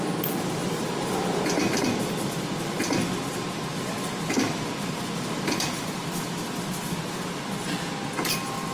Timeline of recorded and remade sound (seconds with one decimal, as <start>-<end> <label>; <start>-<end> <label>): 0.0-0.6 recorded; 0.6-1.9 remade; 1.9-3.7 recorded; 3.7-6.1 remade; 6.1-8.7 recorded